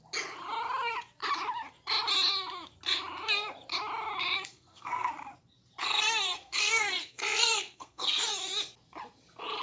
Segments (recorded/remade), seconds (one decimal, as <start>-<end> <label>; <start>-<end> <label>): 0.0-4.5 recorded; 4.5-5.1 remade; 5.1-5.8 recorded; 5.8-8.3 remade; 8.3-9.6 recorded